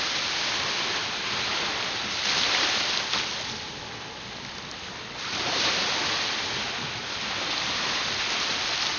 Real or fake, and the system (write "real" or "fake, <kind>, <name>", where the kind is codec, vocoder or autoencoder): real